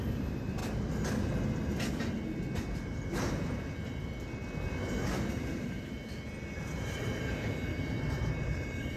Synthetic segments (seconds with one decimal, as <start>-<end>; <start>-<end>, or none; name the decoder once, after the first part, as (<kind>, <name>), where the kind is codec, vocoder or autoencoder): 0.0-0.6 (vocoder, BigVGAN v2); 5.3-9.0